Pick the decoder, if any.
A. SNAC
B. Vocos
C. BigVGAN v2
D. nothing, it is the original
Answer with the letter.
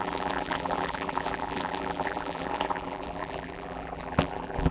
C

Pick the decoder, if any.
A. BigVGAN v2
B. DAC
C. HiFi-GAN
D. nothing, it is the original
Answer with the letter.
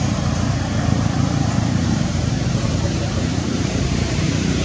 A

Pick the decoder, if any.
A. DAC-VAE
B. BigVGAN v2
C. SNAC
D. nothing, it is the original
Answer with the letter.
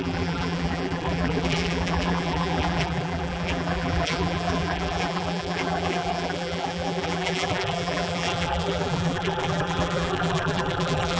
B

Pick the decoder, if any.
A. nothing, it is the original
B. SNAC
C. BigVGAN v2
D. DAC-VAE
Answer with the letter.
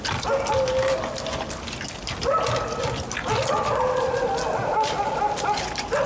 A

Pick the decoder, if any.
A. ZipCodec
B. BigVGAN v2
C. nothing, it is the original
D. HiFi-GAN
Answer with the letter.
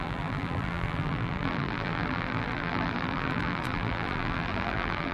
B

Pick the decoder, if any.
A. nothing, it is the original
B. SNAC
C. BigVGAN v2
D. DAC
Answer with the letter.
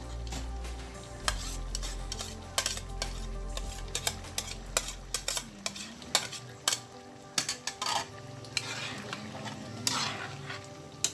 A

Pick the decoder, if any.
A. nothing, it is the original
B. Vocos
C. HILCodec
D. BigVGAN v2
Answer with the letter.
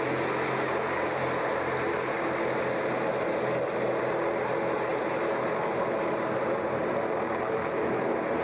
A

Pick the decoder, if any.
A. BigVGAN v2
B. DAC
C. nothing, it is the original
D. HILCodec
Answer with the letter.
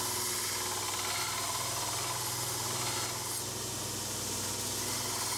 C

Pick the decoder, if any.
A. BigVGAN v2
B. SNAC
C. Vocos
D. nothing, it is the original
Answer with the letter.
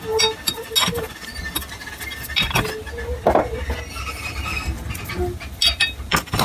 D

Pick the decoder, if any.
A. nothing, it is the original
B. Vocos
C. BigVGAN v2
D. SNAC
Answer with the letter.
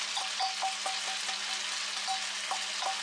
A